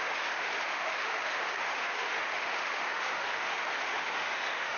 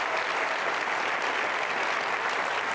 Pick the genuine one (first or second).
second